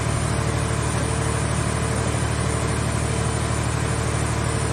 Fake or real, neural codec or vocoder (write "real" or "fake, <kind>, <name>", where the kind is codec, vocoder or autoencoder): real